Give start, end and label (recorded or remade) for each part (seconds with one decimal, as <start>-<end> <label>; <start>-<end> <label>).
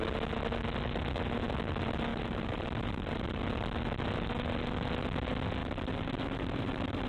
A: 0.0-2.1 recorded; 2.1-3.4 remade; 3.4-5.6 recorded; 5.6-7.1 remade